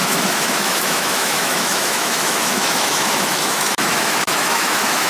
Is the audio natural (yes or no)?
no